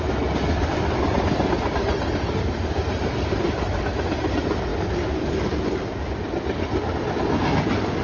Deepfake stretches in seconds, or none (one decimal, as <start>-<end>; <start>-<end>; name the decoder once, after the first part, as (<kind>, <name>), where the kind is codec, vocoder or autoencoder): none